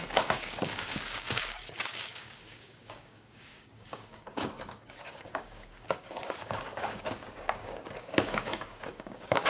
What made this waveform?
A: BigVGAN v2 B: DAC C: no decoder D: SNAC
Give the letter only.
B